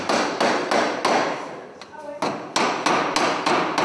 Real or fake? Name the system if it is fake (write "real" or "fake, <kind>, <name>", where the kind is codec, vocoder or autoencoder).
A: real